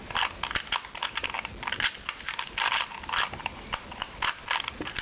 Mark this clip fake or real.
real